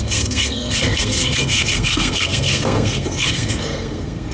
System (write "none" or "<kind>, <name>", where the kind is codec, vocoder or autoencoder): codec, SNAC